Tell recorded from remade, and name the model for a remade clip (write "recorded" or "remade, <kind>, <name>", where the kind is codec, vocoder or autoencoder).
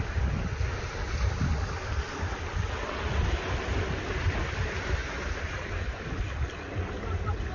recorded